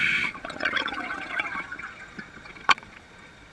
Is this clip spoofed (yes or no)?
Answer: yes